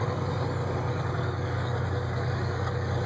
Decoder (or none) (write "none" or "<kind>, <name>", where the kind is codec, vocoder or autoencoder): codec, DAC